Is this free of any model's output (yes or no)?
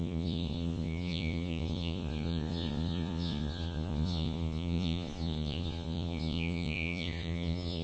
no